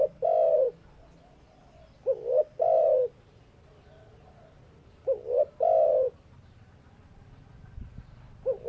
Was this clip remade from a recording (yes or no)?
no